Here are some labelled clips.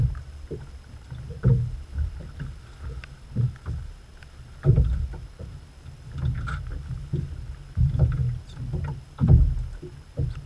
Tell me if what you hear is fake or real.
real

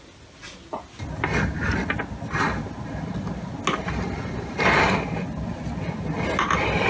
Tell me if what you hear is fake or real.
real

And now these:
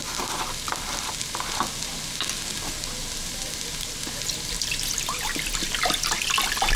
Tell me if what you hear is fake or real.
real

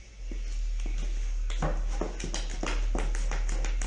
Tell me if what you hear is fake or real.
real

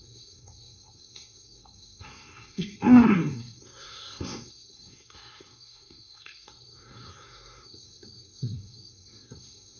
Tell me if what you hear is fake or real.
fake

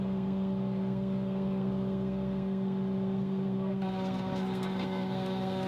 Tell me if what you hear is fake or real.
fake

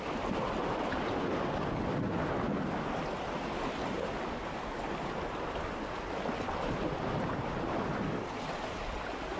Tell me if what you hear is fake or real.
real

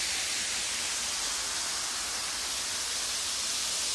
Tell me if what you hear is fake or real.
real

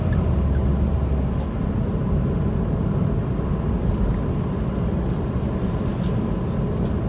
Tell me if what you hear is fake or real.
real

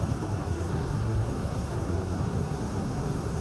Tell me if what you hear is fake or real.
fake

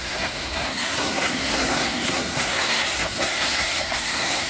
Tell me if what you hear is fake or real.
fake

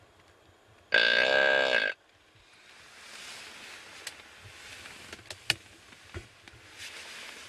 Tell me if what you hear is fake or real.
real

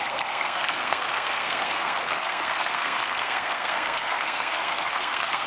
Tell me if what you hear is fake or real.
fake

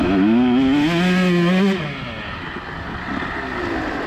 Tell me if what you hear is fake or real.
real